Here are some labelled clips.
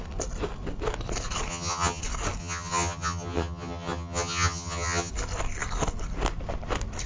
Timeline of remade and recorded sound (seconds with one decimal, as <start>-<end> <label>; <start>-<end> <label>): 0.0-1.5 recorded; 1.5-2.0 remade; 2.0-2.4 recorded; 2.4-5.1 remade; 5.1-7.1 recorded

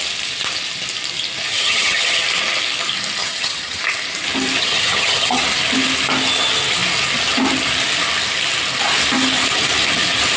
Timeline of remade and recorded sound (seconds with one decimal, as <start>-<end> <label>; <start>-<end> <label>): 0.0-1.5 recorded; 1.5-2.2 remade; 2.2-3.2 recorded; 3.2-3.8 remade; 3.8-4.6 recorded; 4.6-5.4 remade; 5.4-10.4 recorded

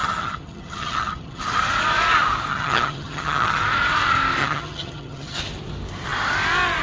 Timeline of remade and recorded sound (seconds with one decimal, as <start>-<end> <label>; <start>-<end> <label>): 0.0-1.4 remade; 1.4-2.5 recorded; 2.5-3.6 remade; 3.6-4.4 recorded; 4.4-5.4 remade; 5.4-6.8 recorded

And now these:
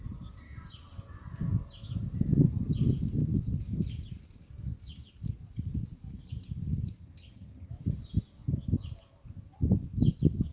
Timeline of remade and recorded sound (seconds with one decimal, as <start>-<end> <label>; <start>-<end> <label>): 0.0-7.0 recorded; 7.0-7.7 remade; 7.7-10.5 recorded